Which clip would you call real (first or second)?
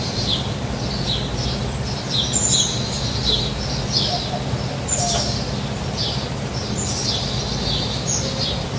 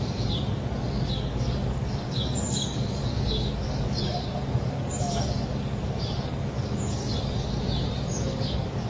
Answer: first